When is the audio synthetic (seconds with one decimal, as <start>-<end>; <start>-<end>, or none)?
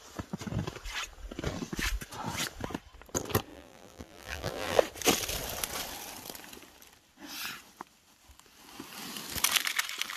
3.5-4.8